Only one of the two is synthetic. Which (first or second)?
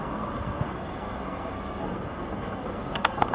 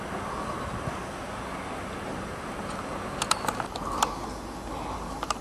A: first